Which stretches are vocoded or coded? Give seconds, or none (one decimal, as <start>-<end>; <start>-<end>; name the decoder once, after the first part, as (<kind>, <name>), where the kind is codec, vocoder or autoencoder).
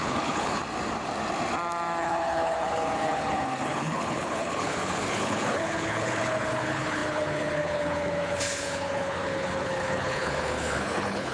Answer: 0.0-0.6 (codec, HILCodec); 2.0-11.3